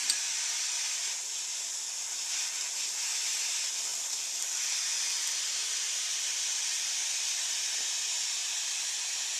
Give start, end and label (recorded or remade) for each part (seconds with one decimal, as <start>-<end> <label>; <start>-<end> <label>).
0.0-0.8 remade; 0.8-3.9 recorded; 3.9-4.4 remade; 4.4-8.4 recorded; 8.4-8.9 remade; 8.9-9.4 recorded